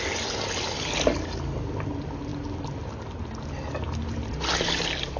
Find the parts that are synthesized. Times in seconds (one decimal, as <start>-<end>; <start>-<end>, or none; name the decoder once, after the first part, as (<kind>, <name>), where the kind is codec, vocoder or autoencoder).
none